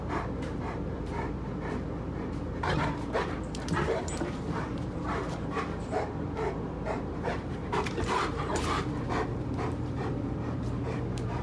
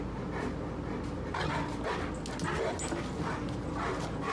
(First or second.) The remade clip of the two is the first